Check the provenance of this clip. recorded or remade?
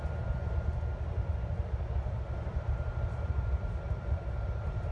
remade